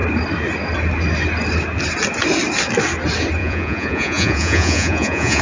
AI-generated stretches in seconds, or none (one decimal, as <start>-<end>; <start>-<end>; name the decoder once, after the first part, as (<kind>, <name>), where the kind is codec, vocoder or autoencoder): 3.4-5.4 (vocoder, Vocos)

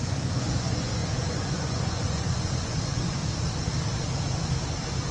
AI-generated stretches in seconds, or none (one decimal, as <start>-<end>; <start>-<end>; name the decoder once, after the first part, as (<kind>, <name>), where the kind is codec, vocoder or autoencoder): 0.0-3.2 (vocoder, Vocos)

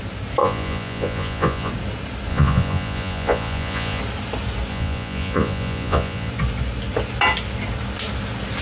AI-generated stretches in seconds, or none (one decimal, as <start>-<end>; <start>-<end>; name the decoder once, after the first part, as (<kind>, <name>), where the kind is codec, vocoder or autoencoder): 0.4-1.7 (vocoder, Vocos); 2.3-4.0; 4.7-6.3